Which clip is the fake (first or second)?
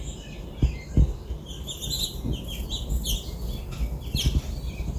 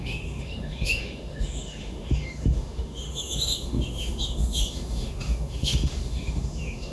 second